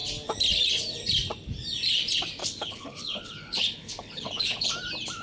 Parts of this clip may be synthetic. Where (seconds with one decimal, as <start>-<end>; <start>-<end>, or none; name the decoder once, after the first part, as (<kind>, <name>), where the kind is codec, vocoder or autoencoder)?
2.4-4.7 (codec, HILCodec)